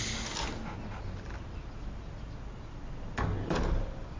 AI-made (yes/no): no